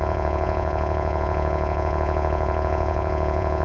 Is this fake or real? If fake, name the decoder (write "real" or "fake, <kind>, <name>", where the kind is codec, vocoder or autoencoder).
fake, vocoder, Vocos